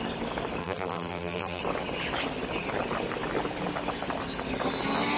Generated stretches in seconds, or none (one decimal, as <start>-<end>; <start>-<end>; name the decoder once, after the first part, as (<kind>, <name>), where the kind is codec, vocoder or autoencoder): 0.6-1.6 (vocoder, BigVGAN v2)